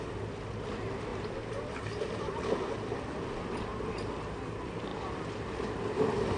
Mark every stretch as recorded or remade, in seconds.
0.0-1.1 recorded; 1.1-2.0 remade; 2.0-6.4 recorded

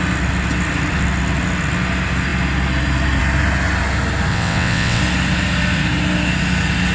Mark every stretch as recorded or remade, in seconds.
0.0-4.3 recorded; 4.3-5.0 remade; 5.0-6.9 recorded

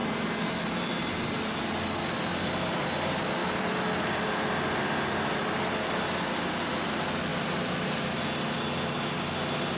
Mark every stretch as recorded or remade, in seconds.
0.0-3.4 recorded; 3.4-5.3 remade; 5.3-7.3 recorded; 7.3-8.2 remade; 8.2-9.8 recorded

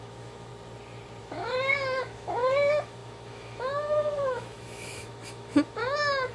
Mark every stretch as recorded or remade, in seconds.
0.0-0.5 remade; 0.5-1.2 recorded; 1.2-6.3 remade

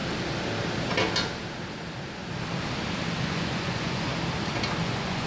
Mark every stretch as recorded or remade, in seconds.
0.0-3.2 recorded; 3.2-4.1 remade; 4.1-4.8 recorded; 4.8-5.3 remade

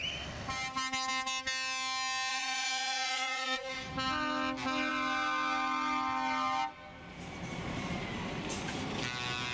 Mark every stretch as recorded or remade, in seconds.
0.0-2.3 recorded; 2.3-3.9 remade; 3.9-9.5 recorded

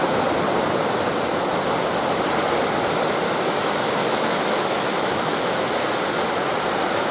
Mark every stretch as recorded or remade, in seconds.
0.0-4.0 recorded; 4.0-5.4 remade; 5.4-7.1 recorded

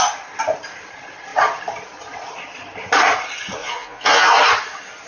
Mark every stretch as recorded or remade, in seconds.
0.0-3.6 recorded; 3.6-4.3 remade; 4.3-5.1 recorded